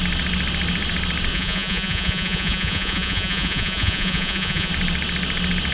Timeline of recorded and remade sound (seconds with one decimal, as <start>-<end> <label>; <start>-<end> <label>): 0.0-1.3 recorded; 1.3-4.7 remade; 4.7-5.7 recorded